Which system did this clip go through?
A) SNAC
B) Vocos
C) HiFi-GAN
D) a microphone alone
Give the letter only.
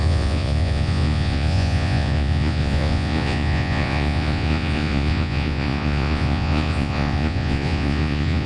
B